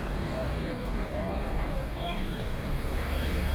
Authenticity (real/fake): fake